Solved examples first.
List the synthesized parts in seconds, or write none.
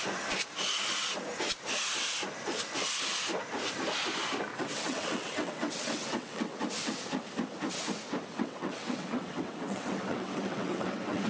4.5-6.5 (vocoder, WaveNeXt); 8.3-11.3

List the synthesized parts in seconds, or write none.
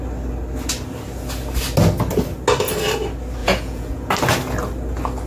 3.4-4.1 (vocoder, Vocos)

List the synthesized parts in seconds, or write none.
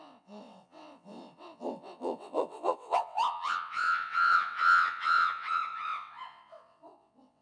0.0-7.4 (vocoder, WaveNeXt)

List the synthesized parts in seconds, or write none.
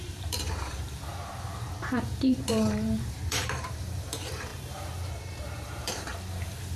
0.0-1.1 (vocoder, BigVGAN v2); 1.7-6.1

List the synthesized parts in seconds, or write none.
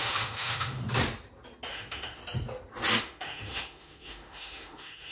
0.0-0.8 (autoencoder, DAC-VAE); 1.7-2.2; 3.0-5.1